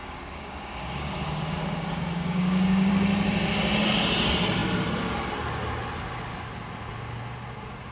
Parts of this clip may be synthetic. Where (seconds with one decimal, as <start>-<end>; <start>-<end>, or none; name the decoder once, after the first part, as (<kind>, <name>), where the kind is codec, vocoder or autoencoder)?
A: 0.0-2.9 (codec, DAC)